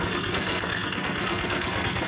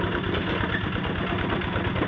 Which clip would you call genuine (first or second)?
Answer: second